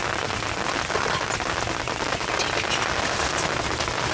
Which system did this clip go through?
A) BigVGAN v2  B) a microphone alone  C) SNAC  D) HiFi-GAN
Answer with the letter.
B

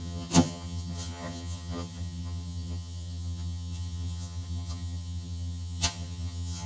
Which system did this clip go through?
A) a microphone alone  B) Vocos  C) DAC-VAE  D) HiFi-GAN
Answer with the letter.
D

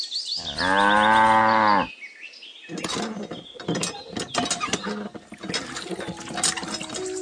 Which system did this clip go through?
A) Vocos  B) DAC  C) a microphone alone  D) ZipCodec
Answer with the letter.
C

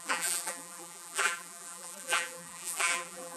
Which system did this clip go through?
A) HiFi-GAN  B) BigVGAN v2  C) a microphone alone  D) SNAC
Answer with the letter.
B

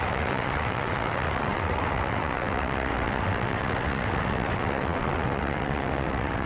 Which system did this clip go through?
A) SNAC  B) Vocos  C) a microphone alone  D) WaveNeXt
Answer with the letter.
D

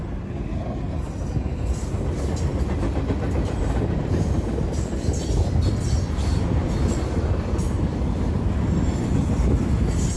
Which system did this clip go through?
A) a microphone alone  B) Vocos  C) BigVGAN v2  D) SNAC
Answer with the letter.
A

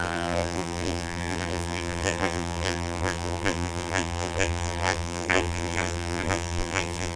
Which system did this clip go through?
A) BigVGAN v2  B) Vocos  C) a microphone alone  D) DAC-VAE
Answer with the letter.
A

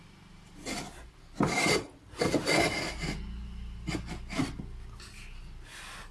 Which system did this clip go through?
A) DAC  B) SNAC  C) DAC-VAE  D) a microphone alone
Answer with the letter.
D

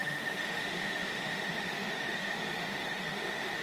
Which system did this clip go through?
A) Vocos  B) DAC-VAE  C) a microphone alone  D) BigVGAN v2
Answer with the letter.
B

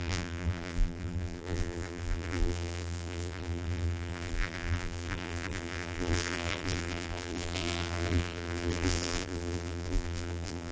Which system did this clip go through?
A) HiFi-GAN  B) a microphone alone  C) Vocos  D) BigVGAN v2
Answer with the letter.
D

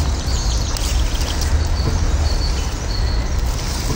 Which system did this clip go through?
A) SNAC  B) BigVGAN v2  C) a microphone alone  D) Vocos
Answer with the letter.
C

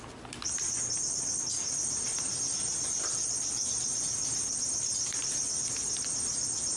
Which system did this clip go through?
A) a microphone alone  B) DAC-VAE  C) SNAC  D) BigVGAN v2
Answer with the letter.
A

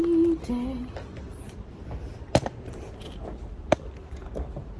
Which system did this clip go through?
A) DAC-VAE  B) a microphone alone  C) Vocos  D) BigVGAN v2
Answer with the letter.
B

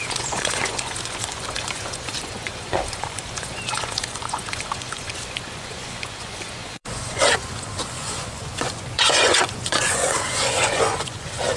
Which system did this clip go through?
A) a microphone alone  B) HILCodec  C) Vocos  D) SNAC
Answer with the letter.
C